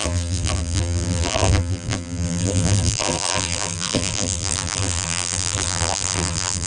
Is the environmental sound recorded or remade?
remade